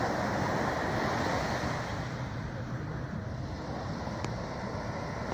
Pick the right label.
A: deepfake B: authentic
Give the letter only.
B